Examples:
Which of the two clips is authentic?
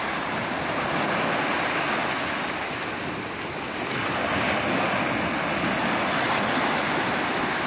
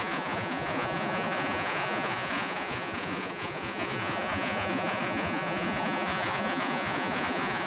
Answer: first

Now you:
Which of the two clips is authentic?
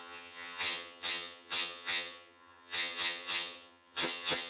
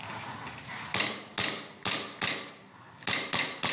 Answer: second